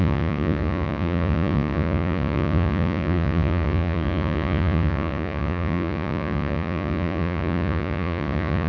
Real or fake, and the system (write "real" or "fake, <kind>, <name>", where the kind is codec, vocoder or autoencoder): fake, vocoder, Vocos